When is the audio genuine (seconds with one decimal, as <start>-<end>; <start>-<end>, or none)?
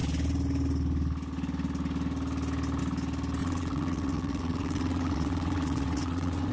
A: 0.0-3.4